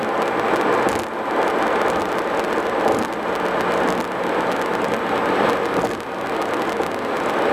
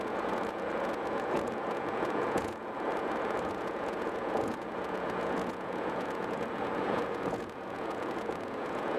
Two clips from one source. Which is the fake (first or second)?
second